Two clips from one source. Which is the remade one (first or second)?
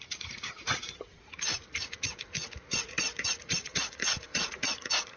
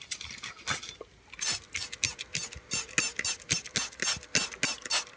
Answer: first